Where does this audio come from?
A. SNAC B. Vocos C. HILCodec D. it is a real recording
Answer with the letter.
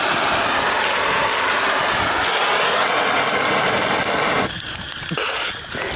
D